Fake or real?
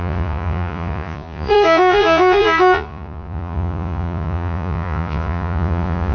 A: fake